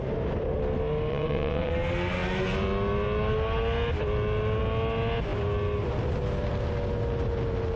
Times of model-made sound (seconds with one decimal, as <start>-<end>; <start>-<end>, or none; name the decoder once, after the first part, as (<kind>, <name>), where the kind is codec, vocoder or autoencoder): 1.1-1.7 (vocoder, WaveNeXt)